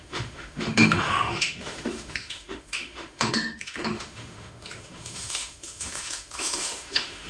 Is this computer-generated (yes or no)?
yes